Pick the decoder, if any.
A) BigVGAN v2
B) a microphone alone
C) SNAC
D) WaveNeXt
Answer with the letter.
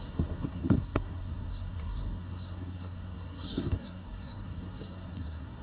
C